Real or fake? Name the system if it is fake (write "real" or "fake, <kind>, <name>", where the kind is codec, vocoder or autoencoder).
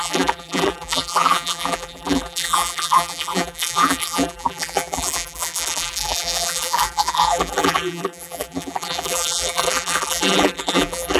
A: fake, vocoder, BigVGAN v2